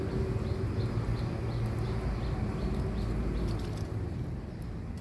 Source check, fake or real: real